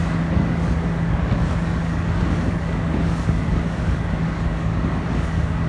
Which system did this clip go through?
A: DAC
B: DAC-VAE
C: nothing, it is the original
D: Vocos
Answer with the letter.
A